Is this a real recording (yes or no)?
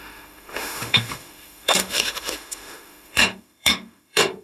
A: no